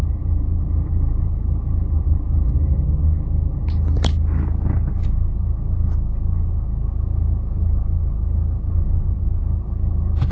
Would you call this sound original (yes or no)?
yes